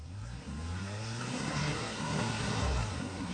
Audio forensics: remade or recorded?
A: remade